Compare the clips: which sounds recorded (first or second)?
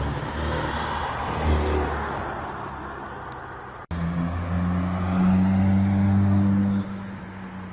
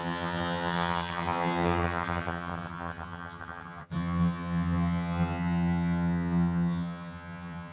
first